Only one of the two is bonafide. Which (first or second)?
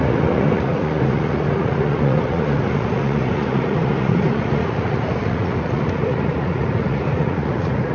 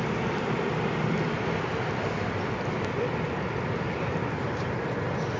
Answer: second